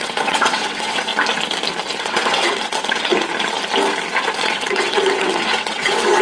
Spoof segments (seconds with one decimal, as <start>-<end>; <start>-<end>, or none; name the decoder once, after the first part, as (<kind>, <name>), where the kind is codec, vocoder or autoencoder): 0.0-1.1 (vocoder, WaveNeXt); 2.0-3.1; 4.4-6.2